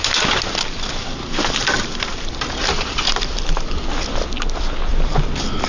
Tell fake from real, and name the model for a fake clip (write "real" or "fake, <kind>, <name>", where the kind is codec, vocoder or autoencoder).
real